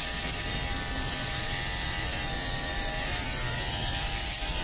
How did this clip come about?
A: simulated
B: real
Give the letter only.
A